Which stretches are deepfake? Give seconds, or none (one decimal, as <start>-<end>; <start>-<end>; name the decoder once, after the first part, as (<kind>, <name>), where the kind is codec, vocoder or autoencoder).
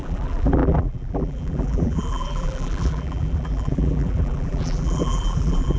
0.0-5.8 (vocoder, BigVGAN v2)